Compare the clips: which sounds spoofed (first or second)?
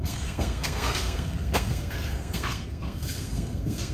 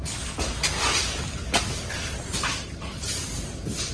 first